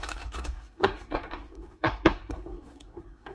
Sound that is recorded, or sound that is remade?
remade